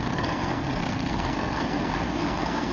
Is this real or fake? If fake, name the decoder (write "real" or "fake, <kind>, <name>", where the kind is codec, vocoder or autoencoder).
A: fake, codec, SNAC